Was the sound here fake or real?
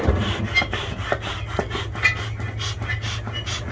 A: real